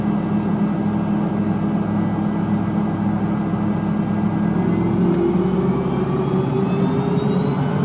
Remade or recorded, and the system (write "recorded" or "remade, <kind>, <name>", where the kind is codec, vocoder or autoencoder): recorded